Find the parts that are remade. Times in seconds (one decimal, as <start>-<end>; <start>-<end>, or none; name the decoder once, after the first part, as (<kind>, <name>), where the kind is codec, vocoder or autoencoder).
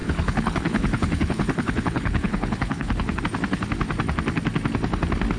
0.0-3.2 (codec, HILCodec)